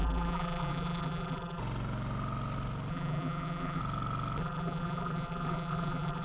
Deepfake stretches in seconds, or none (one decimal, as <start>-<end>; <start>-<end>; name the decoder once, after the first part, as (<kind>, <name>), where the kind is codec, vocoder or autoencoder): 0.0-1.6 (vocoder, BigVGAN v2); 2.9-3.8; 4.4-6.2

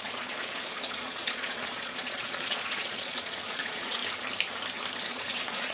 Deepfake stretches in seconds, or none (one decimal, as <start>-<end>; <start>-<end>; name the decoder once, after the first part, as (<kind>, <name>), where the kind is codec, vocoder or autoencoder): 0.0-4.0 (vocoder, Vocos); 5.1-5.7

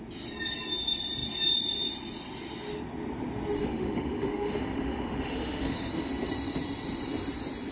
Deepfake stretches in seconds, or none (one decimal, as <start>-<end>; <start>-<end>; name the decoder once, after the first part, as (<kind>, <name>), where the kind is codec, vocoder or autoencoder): 3.6-5.9 (autoencoder, DAC-VAE)